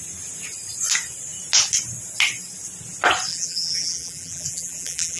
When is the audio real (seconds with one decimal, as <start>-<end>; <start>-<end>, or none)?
0.0-3.3